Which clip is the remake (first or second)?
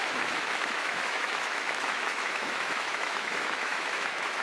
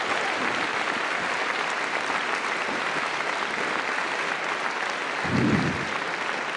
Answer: first